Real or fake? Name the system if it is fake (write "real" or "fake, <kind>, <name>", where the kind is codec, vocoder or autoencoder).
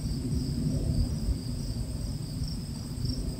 fake, vocoder, BigVGAN v2